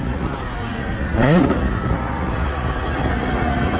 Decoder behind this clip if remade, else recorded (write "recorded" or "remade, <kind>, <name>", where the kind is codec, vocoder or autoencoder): remade, vocoder, Vocos